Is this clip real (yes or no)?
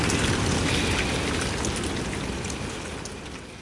yes